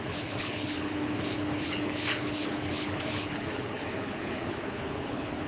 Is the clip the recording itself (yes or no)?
no